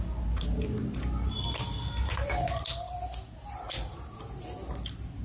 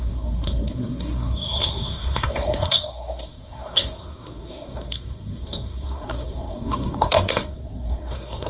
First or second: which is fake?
second